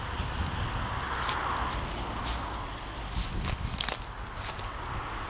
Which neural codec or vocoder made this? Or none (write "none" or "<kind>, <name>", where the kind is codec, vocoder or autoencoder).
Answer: none